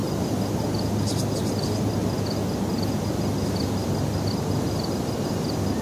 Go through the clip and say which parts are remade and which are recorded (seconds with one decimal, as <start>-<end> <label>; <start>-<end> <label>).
0.0-3.8 recorded; 3.8-4.3 remade; 4.3-5.8 recorded